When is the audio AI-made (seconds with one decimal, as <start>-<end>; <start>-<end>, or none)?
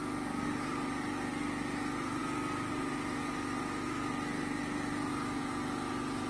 none